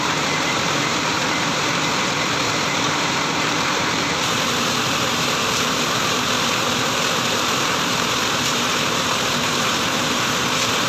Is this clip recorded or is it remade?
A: remade